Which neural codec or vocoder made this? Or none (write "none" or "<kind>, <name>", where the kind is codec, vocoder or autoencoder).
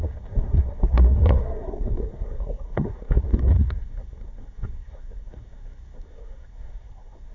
codec, SNAC